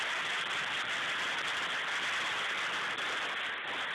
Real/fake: real